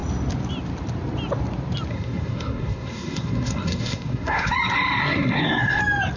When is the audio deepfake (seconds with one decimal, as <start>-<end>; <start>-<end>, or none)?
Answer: 1.9-4.5; 5.0-5.8